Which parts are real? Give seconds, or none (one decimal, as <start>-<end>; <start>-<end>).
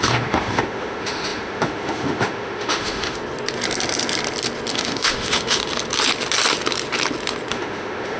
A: 3.2-4.7; 5.6-7.5